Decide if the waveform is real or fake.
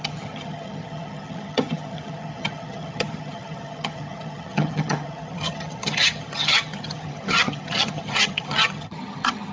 fake